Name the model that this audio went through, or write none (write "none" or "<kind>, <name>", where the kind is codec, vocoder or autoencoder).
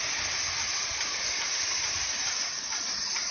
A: none